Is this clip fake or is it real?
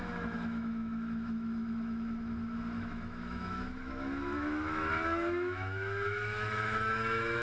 fake